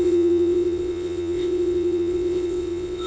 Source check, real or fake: fake